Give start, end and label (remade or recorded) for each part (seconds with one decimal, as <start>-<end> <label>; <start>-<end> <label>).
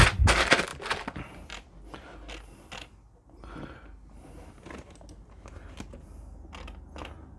0.0-7.4 recorded